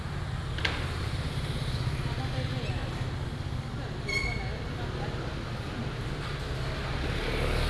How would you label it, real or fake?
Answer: real